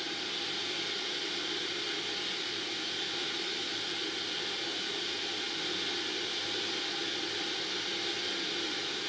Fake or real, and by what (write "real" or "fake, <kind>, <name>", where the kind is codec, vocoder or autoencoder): real